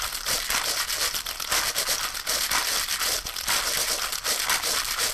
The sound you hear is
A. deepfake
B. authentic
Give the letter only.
B